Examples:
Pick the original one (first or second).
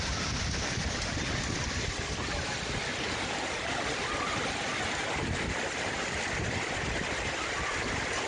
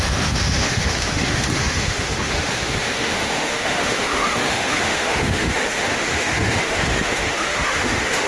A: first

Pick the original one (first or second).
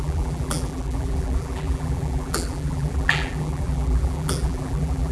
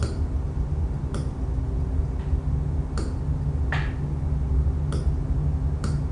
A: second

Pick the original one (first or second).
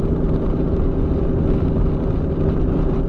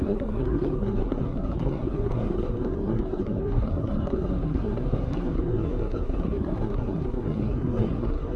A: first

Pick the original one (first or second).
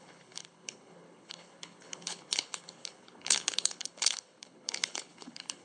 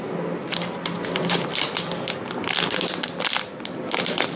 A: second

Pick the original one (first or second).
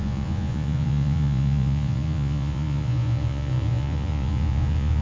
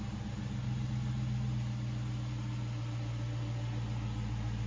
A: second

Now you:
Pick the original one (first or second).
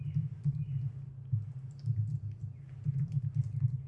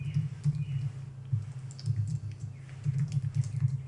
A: second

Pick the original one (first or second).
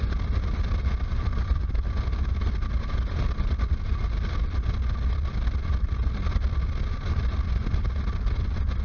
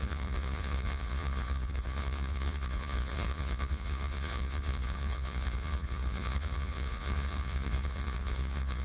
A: first